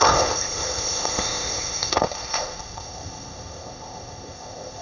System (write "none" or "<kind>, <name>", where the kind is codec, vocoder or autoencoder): codec, ZipCodec